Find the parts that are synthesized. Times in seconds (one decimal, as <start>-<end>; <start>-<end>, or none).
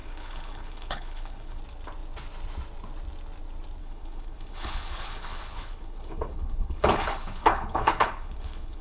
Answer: 0.0-1.6; 3.8-8.8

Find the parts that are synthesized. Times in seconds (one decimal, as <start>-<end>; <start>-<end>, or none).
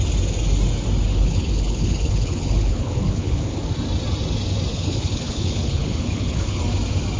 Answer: 1.1-3.6; 4.7-6.6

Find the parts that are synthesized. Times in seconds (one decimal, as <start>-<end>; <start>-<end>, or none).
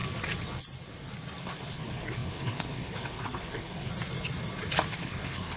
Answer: 1.4-3.9; 4.9-5.6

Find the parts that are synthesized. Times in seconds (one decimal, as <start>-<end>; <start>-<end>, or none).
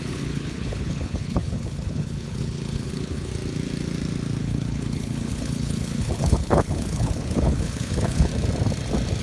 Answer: 0.0-3.3; 4.4-8.3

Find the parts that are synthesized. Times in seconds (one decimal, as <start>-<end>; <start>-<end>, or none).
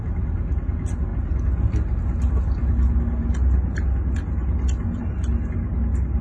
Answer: none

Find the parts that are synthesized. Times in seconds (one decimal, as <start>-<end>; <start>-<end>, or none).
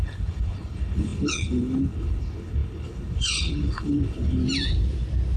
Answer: 0.0-4.4